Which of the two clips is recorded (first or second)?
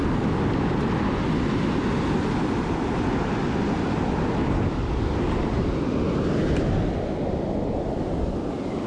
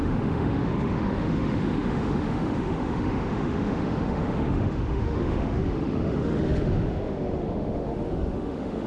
first